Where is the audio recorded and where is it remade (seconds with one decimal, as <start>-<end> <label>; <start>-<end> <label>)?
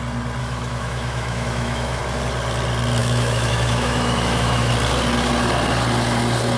0.0-0.4 recorded; 0.4-2.0 remade; 2.0-3.0 recorded; 3.0-4.7 remade; 4.7-6.6 recorded